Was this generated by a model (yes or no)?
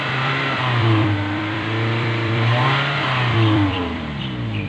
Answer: yes